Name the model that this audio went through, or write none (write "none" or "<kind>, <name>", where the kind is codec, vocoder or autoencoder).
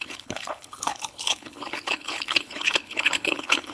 codec, HILCodec